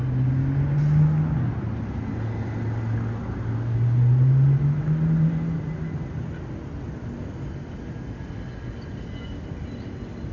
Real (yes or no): yes